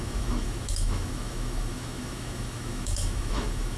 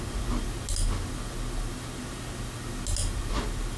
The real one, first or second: second